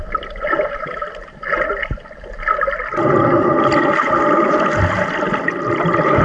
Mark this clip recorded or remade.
recorded